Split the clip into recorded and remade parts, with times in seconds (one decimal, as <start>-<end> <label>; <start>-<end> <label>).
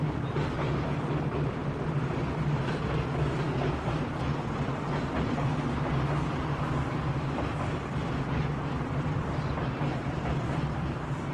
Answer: 0.0-1.6 remade; 1.6-4.0 recorded; 4.0-5.5 remade; 5.5-7.4 recorded; 7.4-11.3 remade